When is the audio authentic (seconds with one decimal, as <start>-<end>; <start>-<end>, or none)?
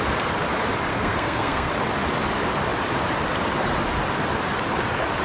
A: 0.0-0.9; 1.7-5.2